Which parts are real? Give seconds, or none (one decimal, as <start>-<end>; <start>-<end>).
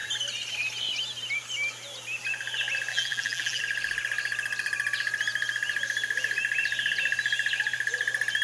0.0-2.9; 3.6-8.4